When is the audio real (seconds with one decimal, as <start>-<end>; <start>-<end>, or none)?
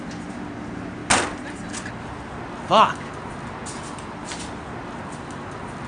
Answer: 0.0-5.9